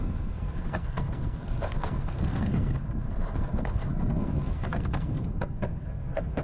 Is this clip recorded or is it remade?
remade